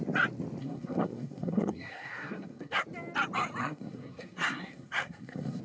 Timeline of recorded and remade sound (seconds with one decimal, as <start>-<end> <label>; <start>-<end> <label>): 0.0-0.6 recorded; 0.6-2.8 remade; 2.8-3.6 recorded; 3.6-5.6 remade